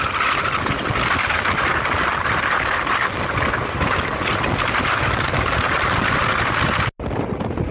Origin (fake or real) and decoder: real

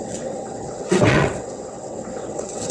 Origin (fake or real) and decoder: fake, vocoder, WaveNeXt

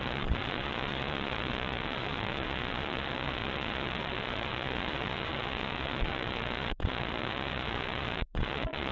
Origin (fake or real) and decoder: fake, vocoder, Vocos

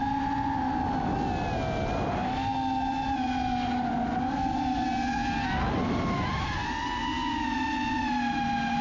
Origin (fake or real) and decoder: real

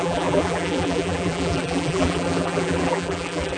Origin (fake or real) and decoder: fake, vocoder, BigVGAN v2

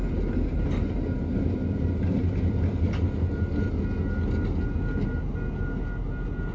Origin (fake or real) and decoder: real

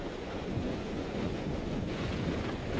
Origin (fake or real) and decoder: fake, vocoder, Vocos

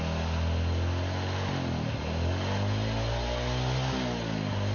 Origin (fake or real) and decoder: real